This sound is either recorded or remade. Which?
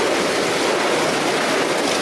recorded